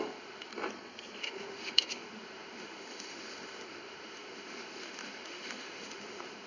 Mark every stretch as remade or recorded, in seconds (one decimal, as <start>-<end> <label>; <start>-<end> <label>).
0.0-0.5 remade; 0.5-1.2 recorded; 1.2-6.5 remade